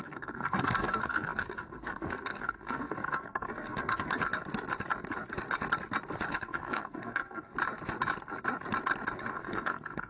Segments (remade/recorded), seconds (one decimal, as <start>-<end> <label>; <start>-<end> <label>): 0.0-4.3 remade; 4.3-6.3 recorded; 6.3-7.5 remade; 7.5-9.3 recorded; 9.3-10.1 remade